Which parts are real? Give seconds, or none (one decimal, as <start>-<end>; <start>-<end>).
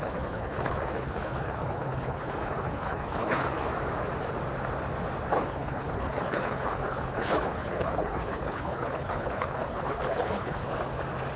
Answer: 3.7-5.3; 10.6-11.4